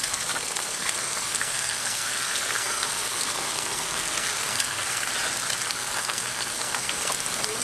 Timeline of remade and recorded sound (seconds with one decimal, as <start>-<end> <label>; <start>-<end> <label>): 0.0-5.1 remade; 5.1-5.7 recorded; 5.7-7.6 remade